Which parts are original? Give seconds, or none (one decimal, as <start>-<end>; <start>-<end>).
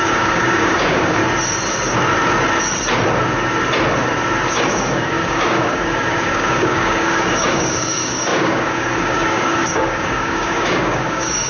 1.2-4.5